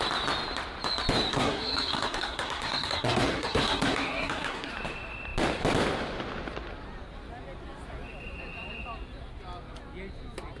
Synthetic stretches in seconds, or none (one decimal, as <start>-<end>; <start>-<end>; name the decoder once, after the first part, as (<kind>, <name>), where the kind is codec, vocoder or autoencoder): 1.3-4.7 (codec, SNAC)